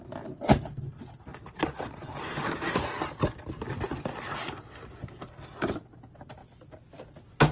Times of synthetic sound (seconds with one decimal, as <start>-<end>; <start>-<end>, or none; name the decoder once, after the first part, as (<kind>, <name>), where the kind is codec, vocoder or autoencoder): none